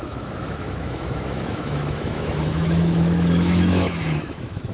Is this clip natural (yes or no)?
no